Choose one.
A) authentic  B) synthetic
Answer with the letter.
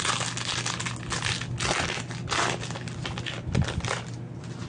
A